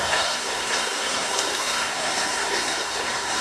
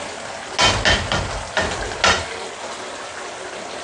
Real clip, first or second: second